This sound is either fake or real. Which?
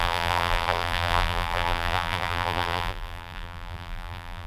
fake